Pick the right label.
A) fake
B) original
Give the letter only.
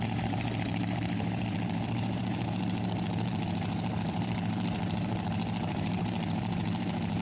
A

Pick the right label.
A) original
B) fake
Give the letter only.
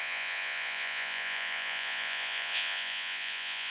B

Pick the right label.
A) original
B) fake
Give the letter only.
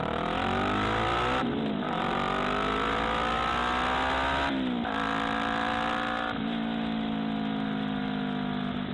A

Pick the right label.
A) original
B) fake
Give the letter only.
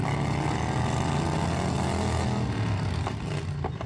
A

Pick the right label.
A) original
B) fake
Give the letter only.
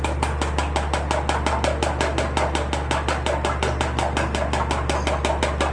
A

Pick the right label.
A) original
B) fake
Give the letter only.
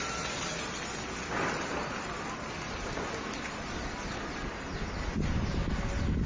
A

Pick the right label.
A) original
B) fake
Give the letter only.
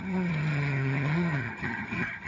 B